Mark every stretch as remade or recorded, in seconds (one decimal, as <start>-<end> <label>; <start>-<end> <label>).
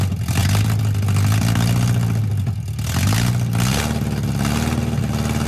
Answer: 0.0-5.5 recorded